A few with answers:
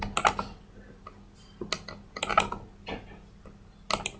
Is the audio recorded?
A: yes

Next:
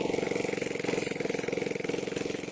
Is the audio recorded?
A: yes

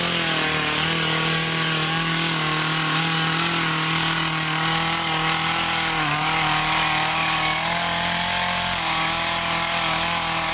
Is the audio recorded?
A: no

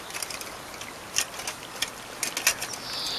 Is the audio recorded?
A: yes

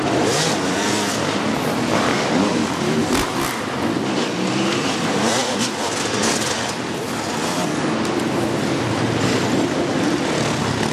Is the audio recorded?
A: yes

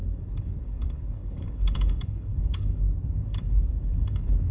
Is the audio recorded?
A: no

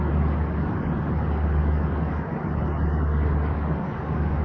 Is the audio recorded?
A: no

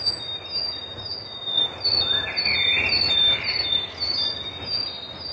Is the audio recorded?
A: yes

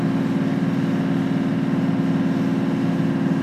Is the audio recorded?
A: yes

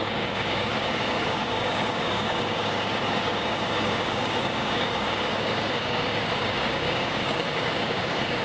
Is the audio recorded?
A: no